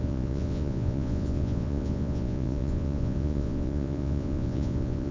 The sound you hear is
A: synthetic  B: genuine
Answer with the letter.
A